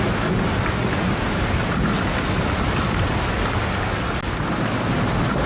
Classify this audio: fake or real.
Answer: real